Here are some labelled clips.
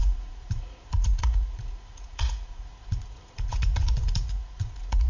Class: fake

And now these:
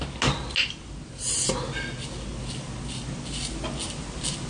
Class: real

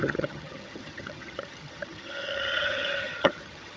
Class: fake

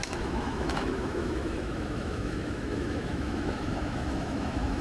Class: fake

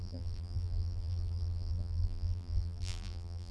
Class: fake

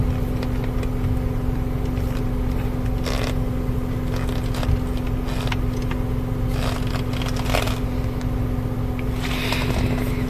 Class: real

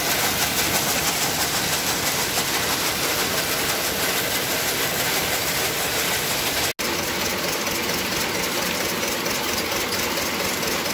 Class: real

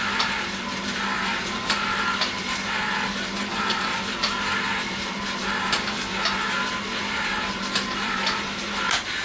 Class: fake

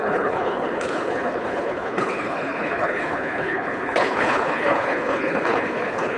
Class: fake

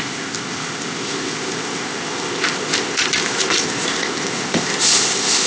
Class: fake